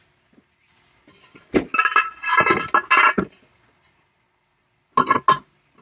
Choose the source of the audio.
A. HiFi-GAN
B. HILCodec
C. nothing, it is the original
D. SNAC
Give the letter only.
C